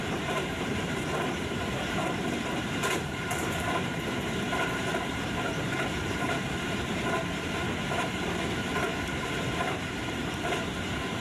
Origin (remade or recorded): remade